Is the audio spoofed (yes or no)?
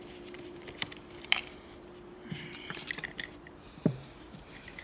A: yes